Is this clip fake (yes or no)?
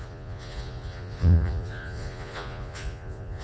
yes